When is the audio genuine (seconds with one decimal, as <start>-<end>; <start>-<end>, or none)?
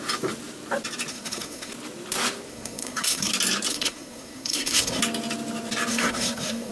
0.0-1.1; 1.7-2.5; 3.3-3.7; 5.0-5.9